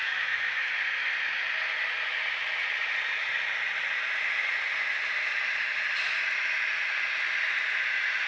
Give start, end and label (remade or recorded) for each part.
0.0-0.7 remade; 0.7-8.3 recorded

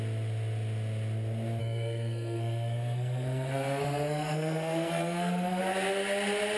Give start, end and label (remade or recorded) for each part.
0.0-1.6 recorded; 1.6-5.6 remade; 5.6-6.6 recorded

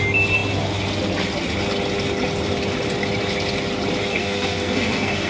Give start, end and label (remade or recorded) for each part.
0.0-4.1 recorded; 4.1-5.3 remade